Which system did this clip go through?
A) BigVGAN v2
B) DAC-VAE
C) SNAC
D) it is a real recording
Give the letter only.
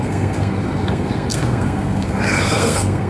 C